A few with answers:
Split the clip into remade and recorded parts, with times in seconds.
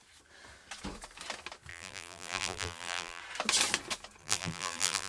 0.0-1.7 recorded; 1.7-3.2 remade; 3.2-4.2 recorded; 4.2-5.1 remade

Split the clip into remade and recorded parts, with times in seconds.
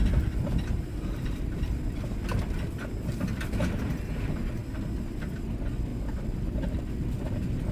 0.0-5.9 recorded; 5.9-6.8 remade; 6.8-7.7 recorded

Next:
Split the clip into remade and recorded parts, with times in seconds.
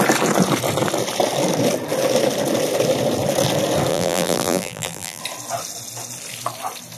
0.0-3.9 recorded; 3.9-5.2 remade; 5.2-7.0 recorded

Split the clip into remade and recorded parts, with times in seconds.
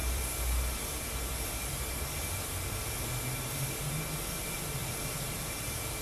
0.0-2.8 remade; 2.8-4.8 recorded; 4.8-5.6 remade; 5.6-6.0 recorded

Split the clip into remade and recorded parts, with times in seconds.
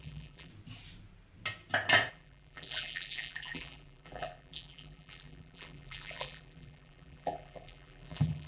0.0-0.5 remade; 0.5-2.1 recorded; 2.1-8.5 remade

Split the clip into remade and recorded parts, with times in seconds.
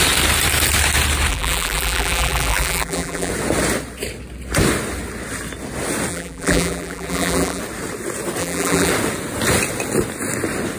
0.0-1.3 recorded; 1.3-3.3 remade; 3.3-6.1 recorded; 6.1-7.6 remade; 7.6-8.4 recorded; 8.4-8.9 remade; 8.9-10.8 recorded